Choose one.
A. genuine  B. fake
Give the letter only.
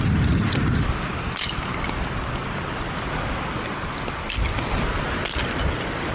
A